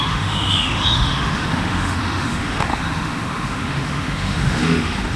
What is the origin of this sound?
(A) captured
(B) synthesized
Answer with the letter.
B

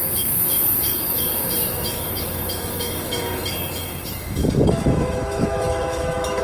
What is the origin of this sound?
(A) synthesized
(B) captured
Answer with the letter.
A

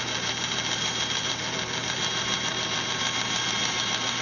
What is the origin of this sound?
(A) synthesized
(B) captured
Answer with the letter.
A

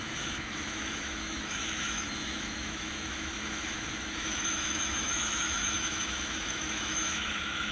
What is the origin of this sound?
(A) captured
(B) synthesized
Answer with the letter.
B